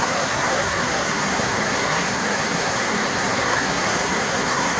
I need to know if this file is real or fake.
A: fake